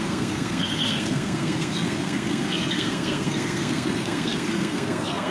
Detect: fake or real fake